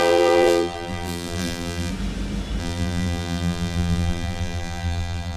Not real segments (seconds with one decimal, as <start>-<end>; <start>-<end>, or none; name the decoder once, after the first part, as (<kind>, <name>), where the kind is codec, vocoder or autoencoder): 0.0-1.9 (vocoder, BigVGAN v2); 2.6-5.4